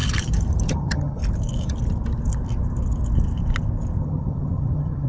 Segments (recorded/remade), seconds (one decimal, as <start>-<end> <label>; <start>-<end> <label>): 0.0-0.7 recorded; 0.7-1.2 remade; 1.2-4.0 recorded; 4.0-5.1 remade